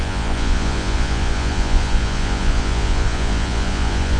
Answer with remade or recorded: remade